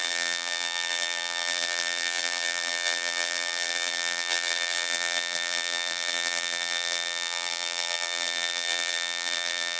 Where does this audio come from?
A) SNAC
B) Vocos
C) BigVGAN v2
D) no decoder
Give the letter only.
C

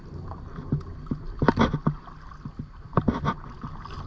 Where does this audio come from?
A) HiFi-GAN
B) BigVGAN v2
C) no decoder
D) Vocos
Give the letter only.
C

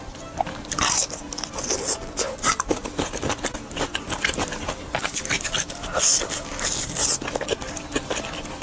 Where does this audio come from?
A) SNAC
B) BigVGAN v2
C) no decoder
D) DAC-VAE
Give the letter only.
C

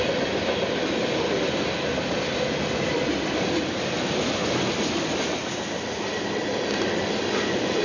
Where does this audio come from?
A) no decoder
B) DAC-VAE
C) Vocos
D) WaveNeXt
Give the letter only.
A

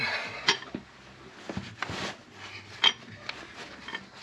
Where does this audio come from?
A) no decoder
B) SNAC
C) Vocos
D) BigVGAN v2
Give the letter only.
A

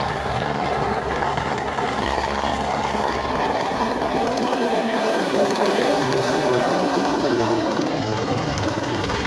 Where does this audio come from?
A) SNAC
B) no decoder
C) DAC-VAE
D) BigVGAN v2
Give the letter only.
A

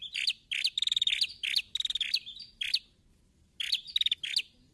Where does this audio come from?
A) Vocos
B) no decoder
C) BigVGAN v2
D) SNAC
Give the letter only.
B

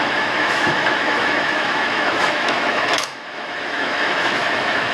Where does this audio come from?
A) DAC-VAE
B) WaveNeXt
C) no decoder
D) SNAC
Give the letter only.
A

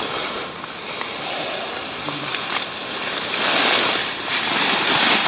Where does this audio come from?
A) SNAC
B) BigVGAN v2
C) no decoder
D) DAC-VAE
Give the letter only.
B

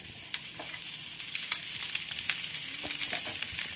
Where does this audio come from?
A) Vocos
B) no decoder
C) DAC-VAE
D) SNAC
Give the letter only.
B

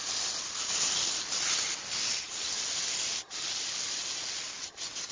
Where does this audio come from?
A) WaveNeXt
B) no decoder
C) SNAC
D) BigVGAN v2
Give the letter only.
B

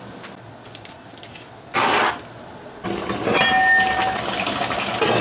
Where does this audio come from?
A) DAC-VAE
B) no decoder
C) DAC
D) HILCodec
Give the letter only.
B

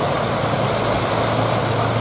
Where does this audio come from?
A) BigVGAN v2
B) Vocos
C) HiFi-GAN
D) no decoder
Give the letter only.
D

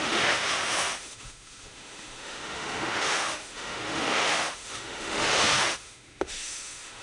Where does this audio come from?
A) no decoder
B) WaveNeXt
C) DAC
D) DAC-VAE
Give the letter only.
D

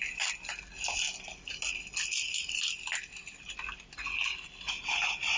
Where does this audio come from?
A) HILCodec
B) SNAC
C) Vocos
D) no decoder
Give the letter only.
D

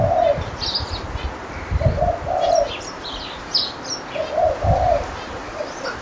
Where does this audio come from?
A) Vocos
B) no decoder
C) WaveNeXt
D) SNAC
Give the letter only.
B